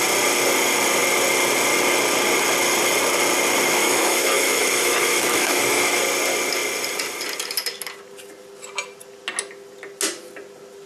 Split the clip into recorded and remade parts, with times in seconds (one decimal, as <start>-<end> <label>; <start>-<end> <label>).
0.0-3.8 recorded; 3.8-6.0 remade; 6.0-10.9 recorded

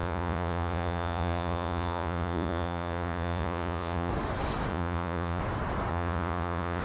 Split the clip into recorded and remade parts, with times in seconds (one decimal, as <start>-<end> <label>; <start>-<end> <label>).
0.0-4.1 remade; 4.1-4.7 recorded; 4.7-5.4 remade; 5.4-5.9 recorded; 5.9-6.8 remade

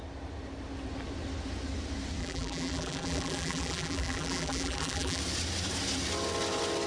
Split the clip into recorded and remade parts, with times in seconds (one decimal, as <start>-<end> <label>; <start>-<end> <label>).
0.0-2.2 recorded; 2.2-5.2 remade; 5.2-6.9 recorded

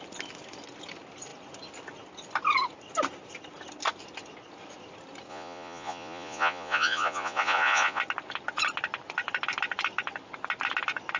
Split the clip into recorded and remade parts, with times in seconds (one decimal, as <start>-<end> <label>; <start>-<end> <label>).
0.0-5.3 recorded; 5.3-8.0 remade; 8.0-11.2 recorded